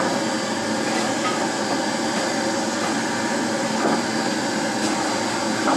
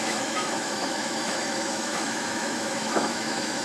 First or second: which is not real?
second